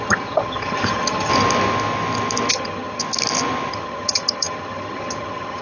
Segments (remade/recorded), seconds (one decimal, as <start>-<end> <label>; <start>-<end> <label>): 0.0-1.3 remade; 1.3-2.5 recorded; 2.5-3.0 remade; 3.0-3.7 recorded; 3.7-5.6 remade